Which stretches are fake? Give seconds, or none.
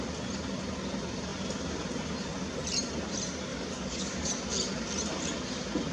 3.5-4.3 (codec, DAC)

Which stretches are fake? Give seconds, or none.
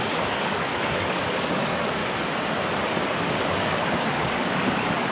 0.0-2.0 (codec, DAC); 3.2-5.1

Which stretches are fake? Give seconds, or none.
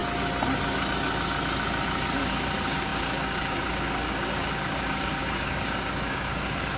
2.2-6.8 (codec, DAC)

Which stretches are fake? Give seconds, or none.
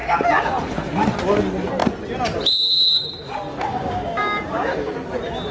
3.5-4.9 (codec, DAC)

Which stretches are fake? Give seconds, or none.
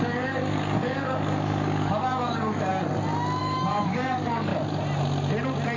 0.0-2.7 (codec, DAC); 3.4-4.5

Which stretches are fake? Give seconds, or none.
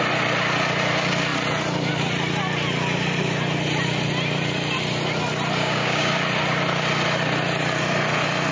5.6-6.1 (codec, DAC)